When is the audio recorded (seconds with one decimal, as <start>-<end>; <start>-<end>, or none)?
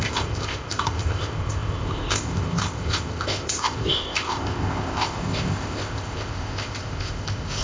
none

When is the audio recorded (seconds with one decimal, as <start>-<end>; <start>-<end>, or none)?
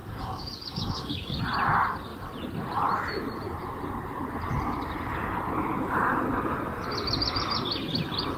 1.4-8.4